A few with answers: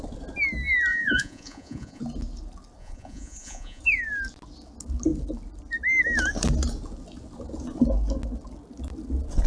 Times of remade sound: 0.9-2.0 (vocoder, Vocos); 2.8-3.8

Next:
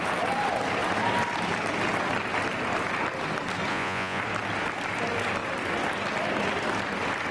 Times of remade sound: 3.7-4.2 (vocoder, Vocos)

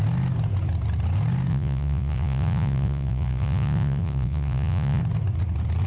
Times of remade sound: 1.5-5.0 (vocoder, Vocos)

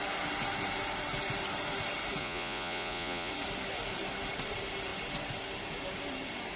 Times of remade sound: 2.2-3.3 (vocoder, Vocos)